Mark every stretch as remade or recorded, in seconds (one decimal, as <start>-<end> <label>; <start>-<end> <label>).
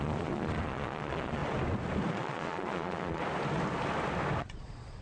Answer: 0.0-1.4 remade; 1.4-2.1 recorded; 2.1-3.2 remade; 3.2-4.4 recorded; 4.4-5.0 remade